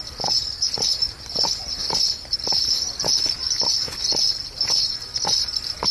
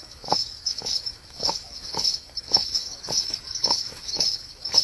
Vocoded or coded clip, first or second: second